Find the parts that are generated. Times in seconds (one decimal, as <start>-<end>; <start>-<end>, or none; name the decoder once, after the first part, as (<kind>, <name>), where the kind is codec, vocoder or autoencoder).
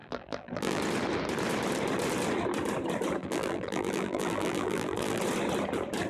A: 0.0-0.8 (vocoder, BigVGAN v2); 3.2-5.2